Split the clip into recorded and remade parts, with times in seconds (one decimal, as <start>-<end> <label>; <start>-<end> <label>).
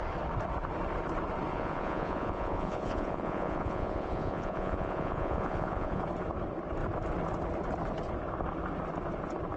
0.0-1.5 recorded; 1.5-6.0 remade; 6.0-9.6 recorded